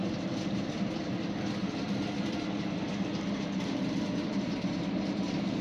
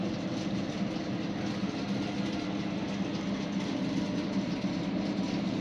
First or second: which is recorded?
second